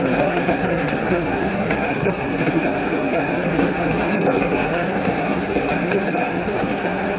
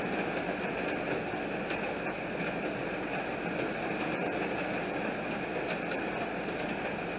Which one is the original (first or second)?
second